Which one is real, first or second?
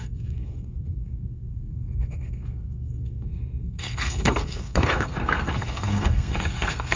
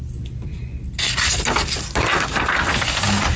second